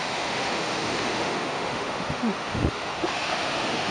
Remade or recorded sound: remade